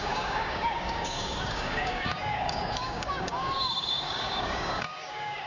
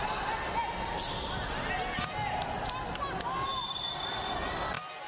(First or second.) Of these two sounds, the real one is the second